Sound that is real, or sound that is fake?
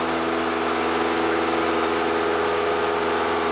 real